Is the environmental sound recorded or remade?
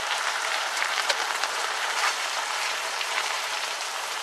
remade